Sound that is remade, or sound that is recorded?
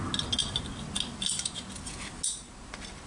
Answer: recorded